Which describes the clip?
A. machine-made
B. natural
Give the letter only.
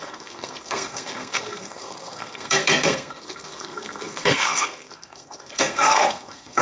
A